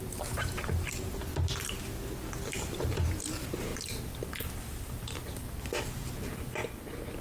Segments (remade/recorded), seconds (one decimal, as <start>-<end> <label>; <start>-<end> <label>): 0.0-1.3 remade; 1.3-2.5 recorded; 2.5-6.6 remade; 6.6-7.2 recorded